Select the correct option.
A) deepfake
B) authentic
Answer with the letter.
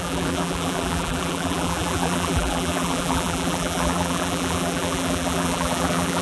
A